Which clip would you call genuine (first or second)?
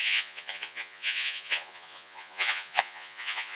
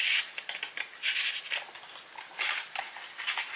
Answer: second